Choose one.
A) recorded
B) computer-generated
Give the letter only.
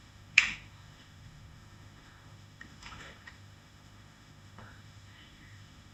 B